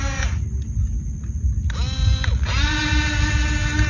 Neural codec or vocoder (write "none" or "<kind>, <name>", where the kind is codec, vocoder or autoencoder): none